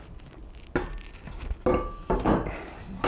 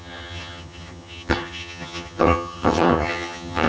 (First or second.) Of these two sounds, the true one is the first